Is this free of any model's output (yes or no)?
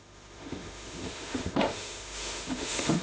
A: no